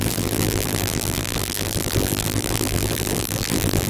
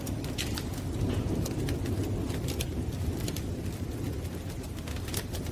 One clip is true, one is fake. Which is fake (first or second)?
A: first